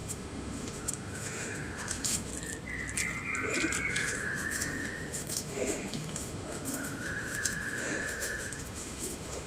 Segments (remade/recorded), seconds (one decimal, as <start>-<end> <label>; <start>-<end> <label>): 0.0-2.3 remade; 2.3-3.9 recorded; 3.9-9.5 remade